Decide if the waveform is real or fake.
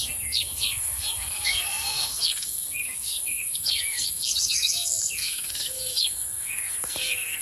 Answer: fake